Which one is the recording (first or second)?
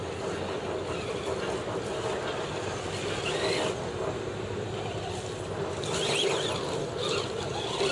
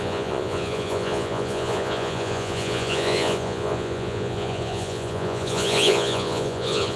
first